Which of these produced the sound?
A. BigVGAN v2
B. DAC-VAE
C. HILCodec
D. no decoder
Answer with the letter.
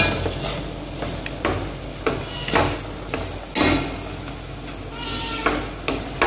D